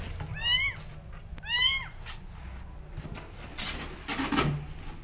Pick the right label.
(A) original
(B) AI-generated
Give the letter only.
A